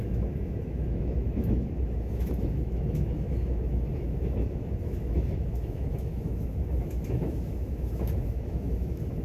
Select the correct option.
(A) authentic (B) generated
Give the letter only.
B